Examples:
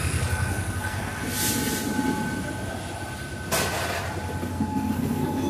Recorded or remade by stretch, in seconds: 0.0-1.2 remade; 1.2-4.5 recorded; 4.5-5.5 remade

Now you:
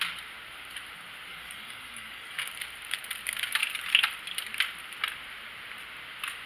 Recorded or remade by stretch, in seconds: 0.0-1.3 recorded; 1.3-2.5 remade; 2.5-6.5 recorded